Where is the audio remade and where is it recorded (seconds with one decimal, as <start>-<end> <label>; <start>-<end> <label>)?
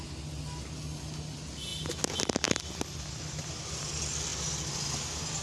0.0-5.4 recorded